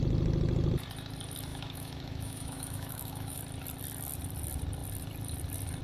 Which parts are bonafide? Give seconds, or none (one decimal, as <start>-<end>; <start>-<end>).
0.0-1.5; 3.4-5.8